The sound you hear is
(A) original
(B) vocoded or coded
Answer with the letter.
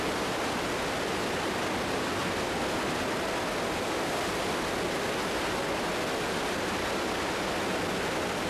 A